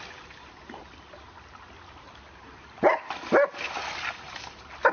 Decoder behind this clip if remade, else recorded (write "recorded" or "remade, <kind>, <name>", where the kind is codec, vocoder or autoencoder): recorded